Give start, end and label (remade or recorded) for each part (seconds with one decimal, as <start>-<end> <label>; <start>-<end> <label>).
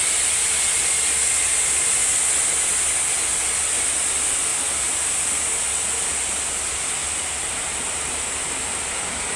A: 0.0-9.4 recorded